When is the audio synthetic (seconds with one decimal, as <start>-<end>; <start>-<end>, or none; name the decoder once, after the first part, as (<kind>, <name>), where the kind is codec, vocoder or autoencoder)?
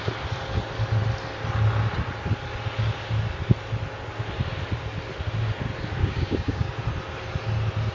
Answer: 6.0-6.7 (codec, DAC)